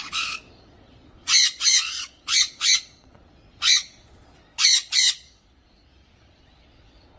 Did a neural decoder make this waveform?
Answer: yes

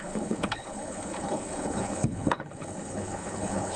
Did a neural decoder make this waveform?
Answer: yes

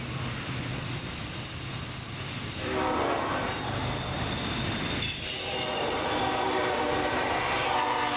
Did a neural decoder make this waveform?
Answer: yes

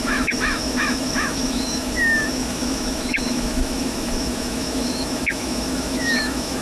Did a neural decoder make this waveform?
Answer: yes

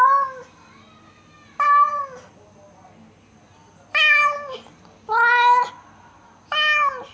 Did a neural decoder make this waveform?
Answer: no